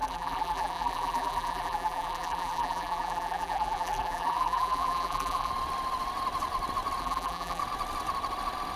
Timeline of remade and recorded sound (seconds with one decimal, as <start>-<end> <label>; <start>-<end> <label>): 0.0-5.5 remade; 5.5-7.0 recorded; 7.0-7.6 remade; 7.6-8.8 recorded